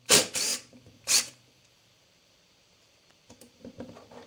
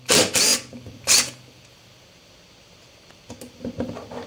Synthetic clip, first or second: first